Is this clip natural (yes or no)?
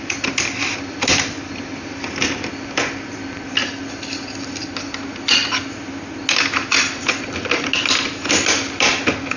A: yes